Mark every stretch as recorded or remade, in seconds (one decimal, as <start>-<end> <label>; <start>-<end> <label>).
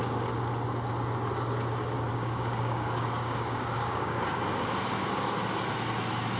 0.0-2.1 recorded; 2.1-4.4 remade; 4.4-6.4 recorded